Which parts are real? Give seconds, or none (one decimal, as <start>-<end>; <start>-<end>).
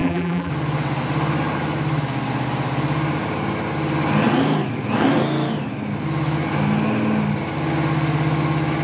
0.5-8.8